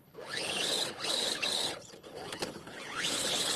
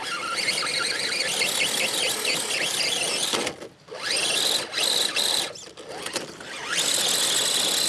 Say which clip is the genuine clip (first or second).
second